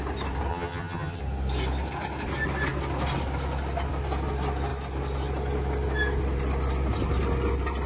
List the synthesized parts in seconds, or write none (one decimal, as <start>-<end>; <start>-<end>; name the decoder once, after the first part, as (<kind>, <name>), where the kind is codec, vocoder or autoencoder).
0.5-1.2 (vocoder, HiFi-GAN)

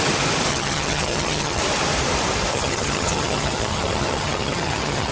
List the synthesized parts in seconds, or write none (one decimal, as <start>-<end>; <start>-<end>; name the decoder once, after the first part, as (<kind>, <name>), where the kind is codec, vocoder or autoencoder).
0.5-1.6 (vocoder, HiFi-GAN); 2.5-5.1

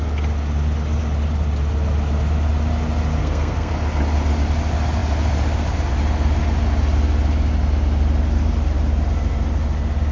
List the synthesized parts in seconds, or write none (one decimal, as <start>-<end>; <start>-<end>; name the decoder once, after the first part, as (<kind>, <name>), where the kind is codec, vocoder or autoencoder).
3.2-3.7 (codec, SNAC)

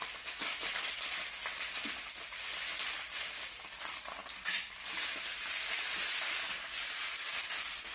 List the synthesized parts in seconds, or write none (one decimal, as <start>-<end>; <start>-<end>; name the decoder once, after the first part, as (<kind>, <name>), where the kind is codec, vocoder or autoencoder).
2.5-6.9 (vocoder, BigVGAN v2)